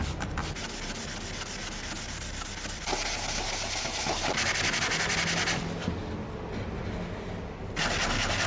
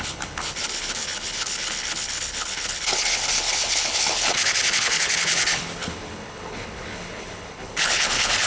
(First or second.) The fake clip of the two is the second